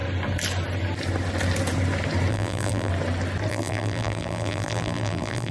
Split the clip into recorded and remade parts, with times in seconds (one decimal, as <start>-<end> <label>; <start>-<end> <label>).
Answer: 0.0-2.3 recorded; 2.3-2.9 remade; 2.9-3.5 recorded; 3.5-5.5 remade